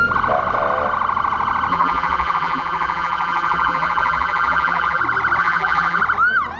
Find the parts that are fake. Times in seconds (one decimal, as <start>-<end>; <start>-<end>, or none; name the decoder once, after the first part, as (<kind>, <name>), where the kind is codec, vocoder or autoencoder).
1.7-5.0 (vocoder, BigVGAN v2); 5.4-6.0